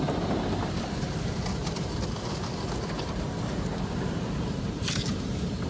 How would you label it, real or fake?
fake